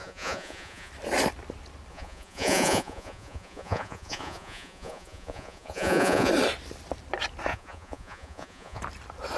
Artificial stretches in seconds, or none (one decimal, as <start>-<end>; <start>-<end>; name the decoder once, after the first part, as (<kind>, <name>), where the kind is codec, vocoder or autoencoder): 0.0-0.9 (vocoder, Vocos); 1.9-6.3; 7.5-8.8